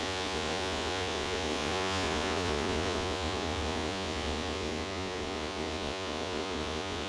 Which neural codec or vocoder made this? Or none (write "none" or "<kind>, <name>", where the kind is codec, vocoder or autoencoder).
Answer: vocoder, Vocos